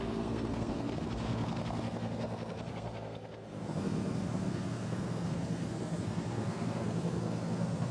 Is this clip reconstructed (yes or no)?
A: yes